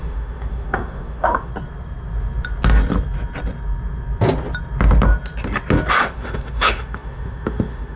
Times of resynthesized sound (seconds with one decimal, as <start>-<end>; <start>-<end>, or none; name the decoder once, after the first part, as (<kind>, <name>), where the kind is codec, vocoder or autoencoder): 0.0-1.5 (autoencoder, DAC-VAE); 5.9-8.0